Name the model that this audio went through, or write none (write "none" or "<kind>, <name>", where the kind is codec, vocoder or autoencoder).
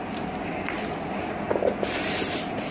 none